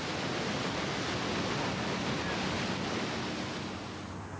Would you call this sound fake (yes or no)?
no